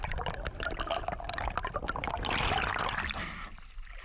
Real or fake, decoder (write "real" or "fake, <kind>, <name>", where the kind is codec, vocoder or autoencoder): real